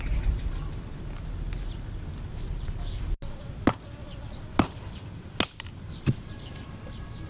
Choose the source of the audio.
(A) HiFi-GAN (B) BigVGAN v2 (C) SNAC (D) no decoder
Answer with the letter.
D